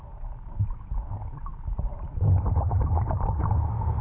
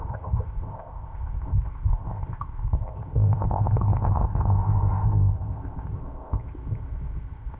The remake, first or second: second